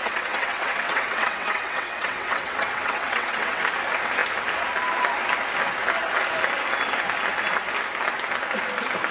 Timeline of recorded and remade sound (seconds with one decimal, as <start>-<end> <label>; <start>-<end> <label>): 0.0-3.6 remade; 3.6-9.1 recorded